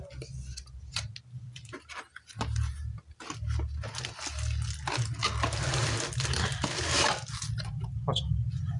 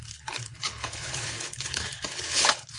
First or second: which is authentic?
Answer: first